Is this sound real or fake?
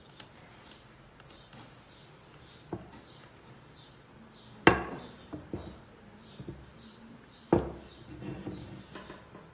real